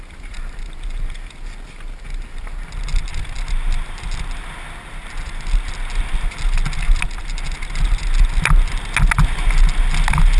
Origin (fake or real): real